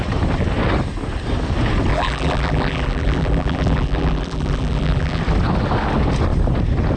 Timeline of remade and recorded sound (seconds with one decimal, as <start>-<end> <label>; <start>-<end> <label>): 0.0-1.9 recorded; 1.9-5.2 remade; 5.2-7.0 recorded